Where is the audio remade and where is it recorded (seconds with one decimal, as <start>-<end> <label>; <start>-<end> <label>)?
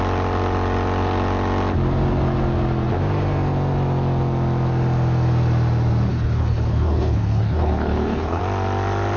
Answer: 0.0-6.1 recorded; 6.1-8.4 remade; 8.4-9.2 recorded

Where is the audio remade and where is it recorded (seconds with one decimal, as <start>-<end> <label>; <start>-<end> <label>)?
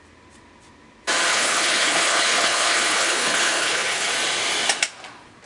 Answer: 0.0-1.3 recorded; 1.3-4.1 remade; 4.1-5.5 recorded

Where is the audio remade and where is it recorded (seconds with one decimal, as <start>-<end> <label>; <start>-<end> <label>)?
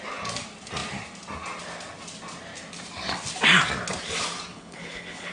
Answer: 0.0-4.5 recorded; 4.5-5.3 remade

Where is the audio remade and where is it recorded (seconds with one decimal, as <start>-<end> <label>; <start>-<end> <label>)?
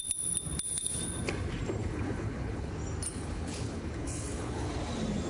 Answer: 0.0-1.8 recorded; 1.8-2.7 remade; 2.7-3.1 recorded; 3.1-4.7 remade; 4.7-5.3 recorded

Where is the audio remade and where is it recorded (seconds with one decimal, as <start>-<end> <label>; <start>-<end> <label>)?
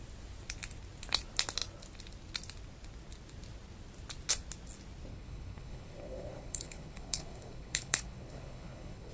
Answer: 0.0-5.1 recorded; 5.1-9.1 remade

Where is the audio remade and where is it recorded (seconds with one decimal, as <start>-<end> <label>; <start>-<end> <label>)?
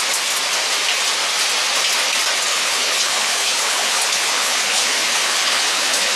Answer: 0.0-2.5 recorded; 2.5-6.2 remade